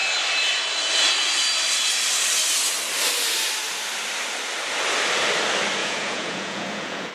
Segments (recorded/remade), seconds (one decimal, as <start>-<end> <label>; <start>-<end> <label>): 0.0-5.8 recorded; 5.8-7.1 remade